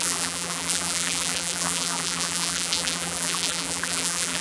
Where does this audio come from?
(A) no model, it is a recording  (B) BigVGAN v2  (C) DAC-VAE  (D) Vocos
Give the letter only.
B